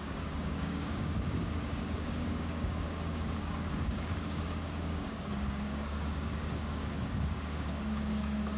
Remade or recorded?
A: remade